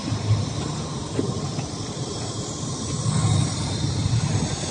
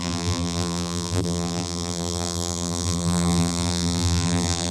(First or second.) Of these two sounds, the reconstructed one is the second